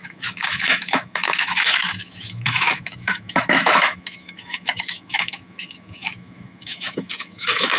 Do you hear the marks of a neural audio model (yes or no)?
yes